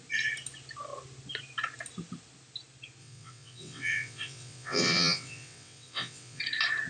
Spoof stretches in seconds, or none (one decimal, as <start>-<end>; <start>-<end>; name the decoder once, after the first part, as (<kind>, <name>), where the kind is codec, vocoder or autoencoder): 3.0-6.4 (vocoder, WaveNeXt)